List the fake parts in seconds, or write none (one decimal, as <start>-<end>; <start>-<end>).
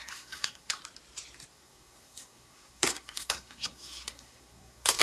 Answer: 0.0-0.8; 1.5-5.0